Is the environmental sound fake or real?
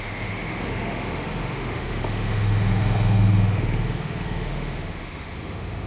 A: fake